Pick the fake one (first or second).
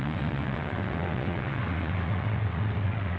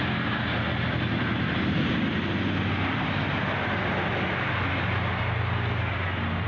first